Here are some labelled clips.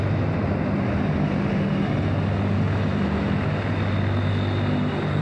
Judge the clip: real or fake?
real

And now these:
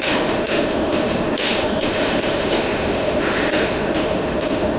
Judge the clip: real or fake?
fake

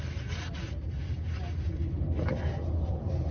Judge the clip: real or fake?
real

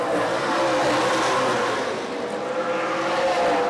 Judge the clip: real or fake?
real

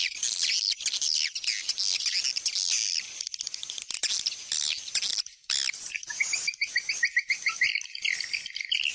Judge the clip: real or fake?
real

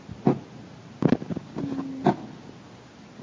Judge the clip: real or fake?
real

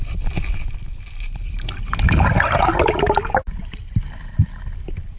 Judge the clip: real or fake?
real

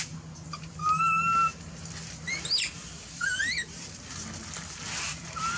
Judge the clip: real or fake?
real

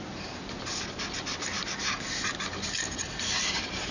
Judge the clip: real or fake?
real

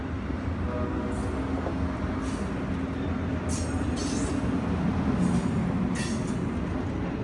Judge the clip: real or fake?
real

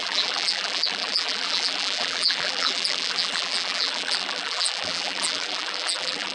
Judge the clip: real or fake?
fake